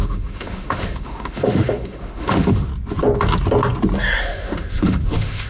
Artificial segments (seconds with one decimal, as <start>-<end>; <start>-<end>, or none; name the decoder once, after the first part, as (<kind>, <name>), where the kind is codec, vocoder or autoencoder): 0.0-2.7 (autoencoder, DAC-VAE); 4.2-5.5